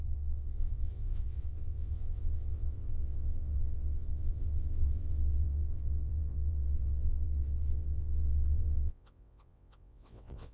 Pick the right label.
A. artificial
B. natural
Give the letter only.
A